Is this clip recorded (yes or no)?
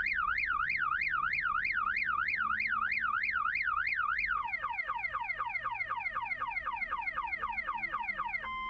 yes